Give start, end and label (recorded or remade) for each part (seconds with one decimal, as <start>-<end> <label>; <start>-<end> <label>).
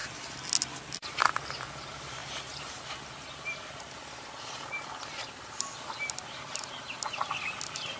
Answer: 0.0-8.0 recorded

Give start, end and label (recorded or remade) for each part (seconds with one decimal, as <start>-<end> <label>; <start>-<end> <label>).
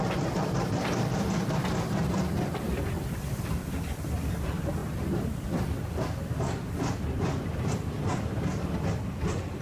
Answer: 0.0-4.8 remade; 4.8-5.3 recorded; 5.3-9.6 remade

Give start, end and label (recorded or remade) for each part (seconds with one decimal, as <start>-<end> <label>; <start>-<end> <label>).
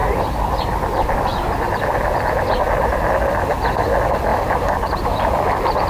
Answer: 0.0-0.6 remade; 0.6-4.3 recorded; 4.3-5.3 remade; 5.3-5.9 recorded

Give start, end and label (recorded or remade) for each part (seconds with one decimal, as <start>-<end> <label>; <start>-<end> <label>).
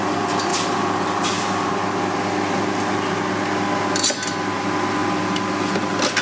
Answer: 0.0-0.5 recorded; 0.5-1.7 remade; 1.7-6.2 recorded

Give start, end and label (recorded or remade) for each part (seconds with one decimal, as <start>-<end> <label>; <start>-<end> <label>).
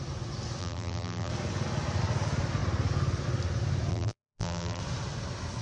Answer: 0.0-0.6 recorded; 0.6-1.3 remade; 1.3-3.9 recorded; 3.9-4.8 remade; 4.8-5.6 recorded